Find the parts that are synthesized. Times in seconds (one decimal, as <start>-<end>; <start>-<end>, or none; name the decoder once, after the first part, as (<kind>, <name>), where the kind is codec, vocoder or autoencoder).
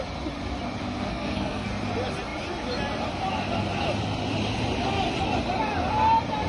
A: 0.8-1.7 (codec, SNAC)